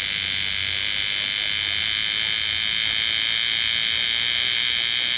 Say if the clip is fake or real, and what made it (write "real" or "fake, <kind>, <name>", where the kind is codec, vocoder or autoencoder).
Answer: real